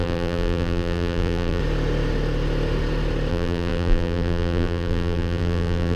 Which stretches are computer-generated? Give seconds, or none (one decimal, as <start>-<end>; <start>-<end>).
0.0-1.6; 3.3-6.0